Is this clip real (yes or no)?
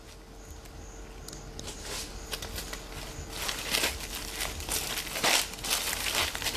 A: yes